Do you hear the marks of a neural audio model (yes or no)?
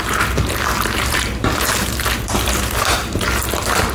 yes